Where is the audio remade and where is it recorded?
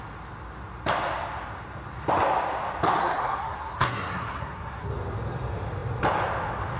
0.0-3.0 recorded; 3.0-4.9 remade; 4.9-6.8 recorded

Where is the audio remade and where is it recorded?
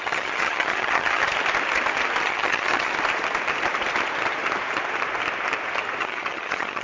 0.0-1.2 remade; 1.2-2.2 recorded; 2.2-2.9 remade; 2.9-6.0 recorded; 6.0-6.8 remade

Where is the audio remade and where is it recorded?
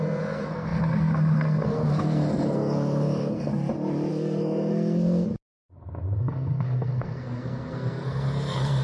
0.0-3.5 remade; 3.5-4.1 recorded; 4.1-5.3 remade; 5.3-6.2 recorded; 6.2-8.8 remade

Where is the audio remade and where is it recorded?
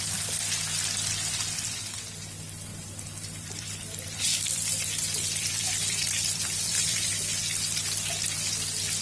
0.0-2.7 recorded; 2.7-7.4 remade; 7.4-9.0 recorded